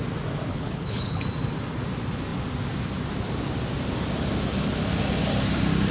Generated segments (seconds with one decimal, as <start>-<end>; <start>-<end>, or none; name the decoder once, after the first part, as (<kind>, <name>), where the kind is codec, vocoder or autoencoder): 0.5-1.2 (codec, HILCodec)